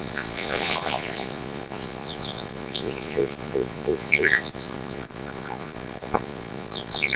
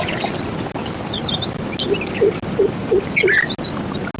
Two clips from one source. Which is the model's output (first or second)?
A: first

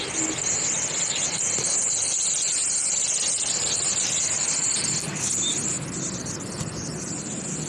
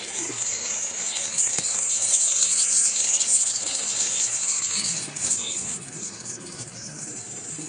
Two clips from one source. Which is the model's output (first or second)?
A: second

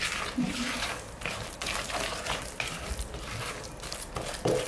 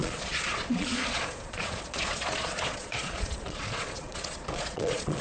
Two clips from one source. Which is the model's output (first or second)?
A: second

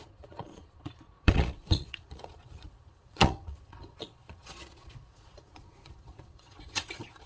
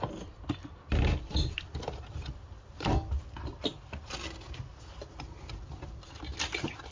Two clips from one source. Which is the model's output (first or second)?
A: first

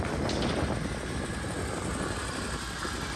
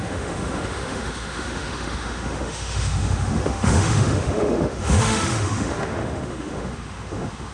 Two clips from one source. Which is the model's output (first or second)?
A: second